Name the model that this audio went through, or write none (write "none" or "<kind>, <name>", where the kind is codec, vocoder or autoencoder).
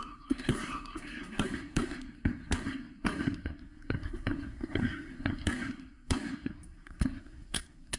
codec, SNAC